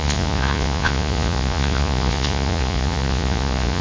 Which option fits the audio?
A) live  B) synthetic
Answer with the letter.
B